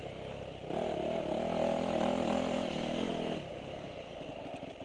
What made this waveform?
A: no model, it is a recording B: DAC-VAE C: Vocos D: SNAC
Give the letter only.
A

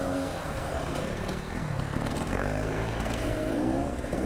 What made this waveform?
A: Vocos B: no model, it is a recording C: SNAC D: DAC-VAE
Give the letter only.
C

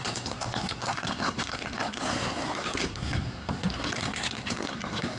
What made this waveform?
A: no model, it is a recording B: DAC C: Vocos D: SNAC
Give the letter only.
D